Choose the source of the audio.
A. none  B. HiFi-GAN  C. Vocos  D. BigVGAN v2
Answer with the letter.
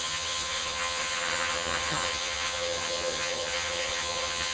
B